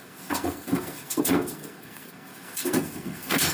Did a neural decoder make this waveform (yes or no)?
yes